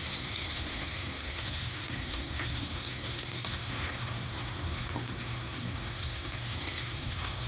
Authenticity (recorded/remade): remade